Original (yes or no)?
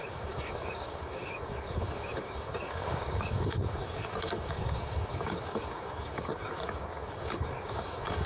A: no